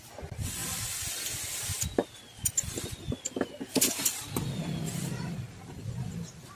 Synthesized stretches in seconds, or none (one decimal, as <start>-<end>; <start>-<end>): none